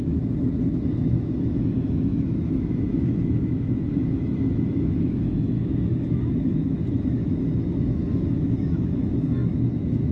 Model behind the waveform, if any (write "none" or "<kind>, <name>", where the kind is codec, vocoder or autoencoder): autoencoder, DAC-VAE